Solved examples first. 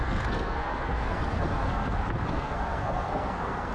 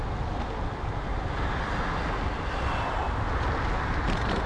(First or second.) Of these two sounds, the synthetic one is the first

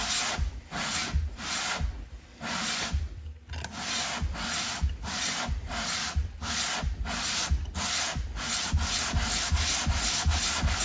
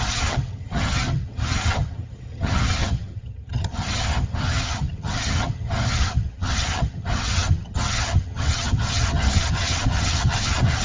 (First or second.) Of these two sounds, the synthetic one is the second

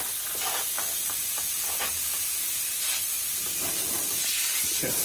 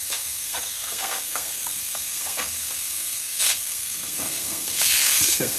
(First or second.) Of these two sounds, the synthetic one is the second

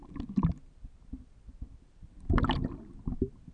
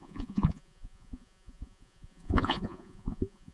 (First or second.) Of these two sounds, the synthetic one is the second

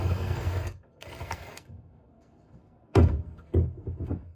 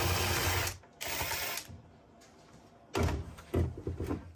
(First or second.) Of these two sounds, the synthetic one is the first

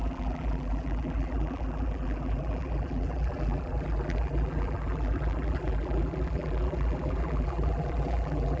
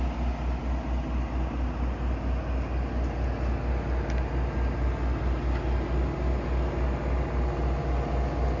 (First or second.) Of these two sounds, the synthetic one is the first